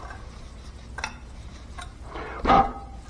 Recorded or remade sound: recorded